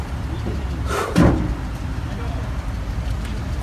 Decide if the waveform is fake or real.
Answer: real